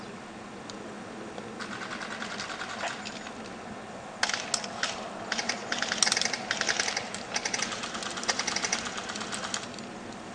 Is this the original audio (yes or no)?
yes